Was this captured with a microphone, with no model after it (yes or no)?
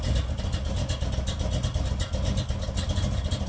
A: yes